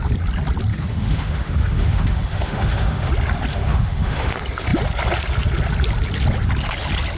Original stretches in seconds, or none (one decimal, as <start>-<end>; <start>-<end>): 0.0-0.7; 3.1-3.5; 4.3-7.2